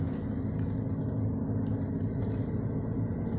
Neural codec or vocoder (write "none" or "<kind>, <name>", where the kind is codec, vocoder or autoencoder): none